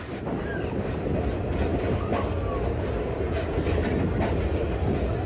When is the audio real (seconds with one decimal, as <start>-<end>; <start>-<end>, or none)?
0.0-5.3